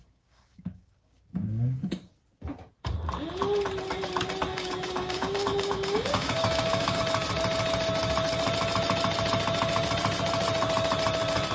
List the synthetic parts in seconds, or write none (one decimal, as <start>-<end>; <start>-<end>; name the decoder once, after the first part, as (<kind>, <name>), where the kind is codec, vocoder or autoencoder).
0.0-2.1 (codec, DAC); 4.5-7.0